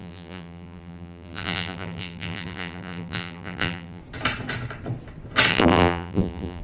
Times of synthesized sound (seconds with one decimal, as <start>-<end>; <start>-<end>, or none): 0.0-4.0; 5.5-6.6